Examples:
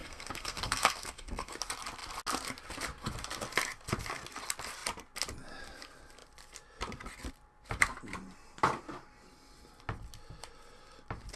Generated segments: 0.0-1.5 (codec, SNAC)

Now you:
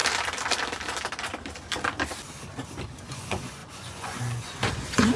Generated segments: 3.1-5.2 (vocoder, Vocos)